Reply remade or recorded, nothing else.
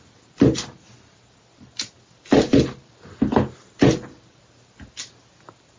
recorded